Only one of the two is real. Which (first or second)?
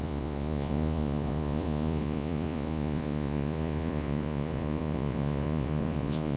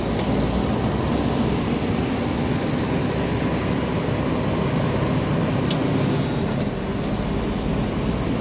second